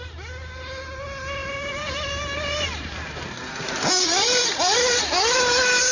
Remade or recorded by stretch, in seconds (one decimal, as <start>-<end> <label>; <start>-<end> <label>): 0.0-1.4 recorded; 1.4-4.4 remade; 4.4-5.9 recorded